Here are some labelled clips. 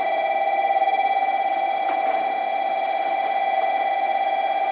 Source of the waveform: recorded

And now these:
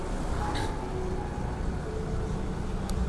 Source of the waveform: recorded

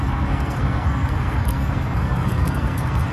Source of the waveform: remade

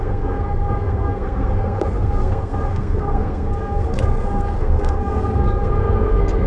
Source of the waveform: remade